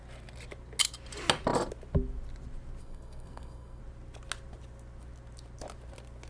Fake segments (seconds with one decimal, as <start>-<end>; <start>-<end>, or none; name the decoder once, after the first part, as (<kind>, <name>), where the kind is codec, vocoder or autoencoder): 2.8-3.8 (codec, SNAC)